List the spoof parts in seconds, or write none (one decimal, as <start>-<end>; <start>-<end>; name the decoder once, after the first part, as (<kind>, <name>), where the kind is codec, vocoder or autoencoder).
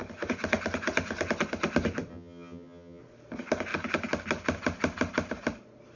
2.1-3.0 (vocoder, HiFi-GAN)